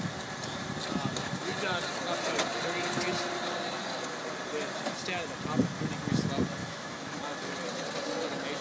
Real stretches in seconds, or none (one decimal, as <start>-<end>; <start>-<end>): 0.0-6.6; 7.2-8.6